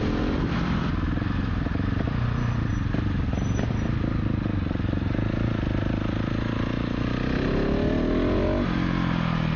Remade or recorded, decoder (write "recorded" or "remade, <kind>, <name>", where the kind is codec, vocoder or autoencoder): recorded